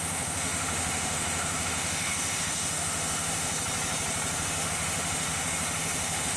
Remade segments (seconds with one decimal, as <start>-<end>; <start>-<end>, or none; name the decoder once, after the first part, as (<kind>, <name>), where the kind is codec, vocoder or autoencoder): 0.0-3.5 (autoencoder, DAC-VAE); 4.3-6.4